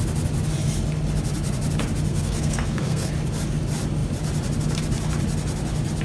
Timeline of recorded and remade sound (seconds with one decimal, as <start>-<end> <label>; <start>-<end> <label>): 0.0-2.1 recorded; 2.1-3.1 remade; 3.1-6.0 recorded